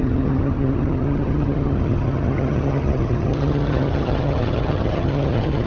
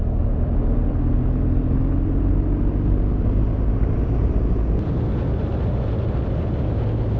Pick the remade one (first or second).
first